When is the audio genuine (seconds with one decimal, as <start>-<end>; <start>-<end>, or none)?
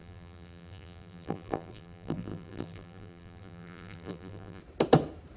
4.6-5.4